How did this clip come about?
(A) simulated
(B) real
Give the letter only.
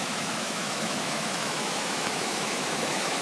A